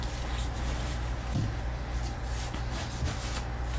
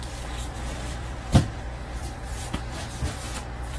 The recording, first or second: first